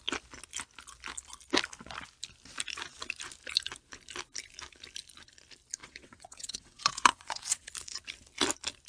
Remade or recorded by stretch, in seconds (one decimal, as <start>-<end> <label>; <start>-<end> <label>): 0.0-5.8 recorded; 5.8-7.7 remade; 7.7-8.9 recorded